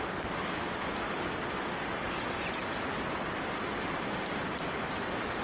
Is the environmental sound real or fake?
real